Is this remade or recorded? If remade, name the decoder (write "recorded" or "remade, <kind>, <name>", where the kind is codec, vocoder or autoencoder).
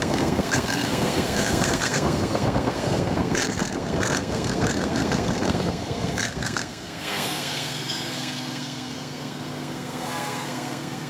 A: remade, codec, SNAC